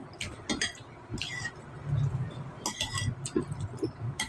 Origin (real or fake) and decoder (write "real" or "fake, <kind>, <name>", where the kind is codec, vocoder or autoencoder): real